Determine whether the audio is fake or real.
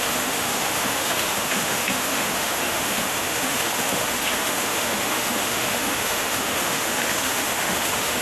fake